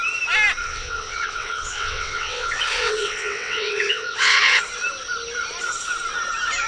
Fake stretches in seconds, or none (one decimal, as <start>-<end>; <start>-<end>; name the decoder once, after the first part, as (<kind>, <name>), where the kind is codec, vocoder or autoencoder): 0.6-4.6 (vocoder, WaveNeXt)